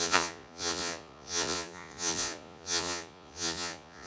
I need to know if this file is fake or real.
fake